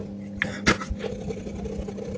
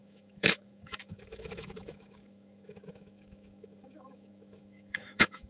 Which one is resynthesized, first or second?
second